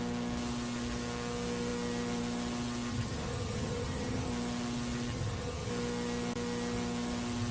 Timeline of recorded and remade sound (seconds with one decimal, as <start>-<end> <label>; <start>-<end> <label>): 0.0-2.9 recorded; 2.9-4.3 remade; 4.3-5.1 recorded; 5.1-5.7 remade; 5.7-7.5 recorded

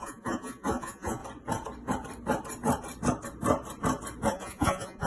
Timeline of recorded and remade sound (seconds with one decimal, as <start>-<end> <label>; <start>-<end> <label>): 0.0-1.2 remade; 1.2-4.3 recorded; 4.3-5.1 remade

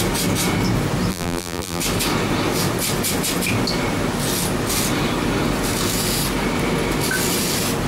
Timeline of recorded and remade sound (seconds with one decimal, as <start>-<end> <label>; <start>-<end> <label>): 0.0-1.1 recorded; 1.1-1.8 remade; 1.8-7.9 recorded

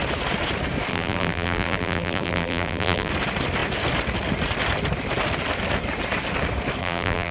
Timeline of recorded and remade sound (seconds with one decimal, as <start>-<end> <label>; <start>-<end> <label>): 0.0-0.9 recorded; 0.9-3.1 remade; 3.1-6.8 recorded; 6.8-7.3 remade

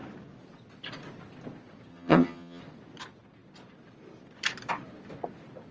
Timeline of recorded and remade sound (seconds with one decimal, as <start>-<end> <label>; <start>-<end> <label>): 0.0-1.9 recorded; 1.9-2.6 remade; 2.6-5.7 recorded